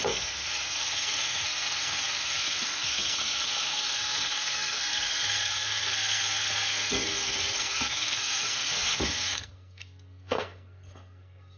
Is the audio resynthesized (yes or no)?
yes